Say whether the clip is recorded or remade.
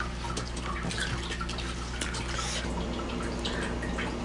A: recorded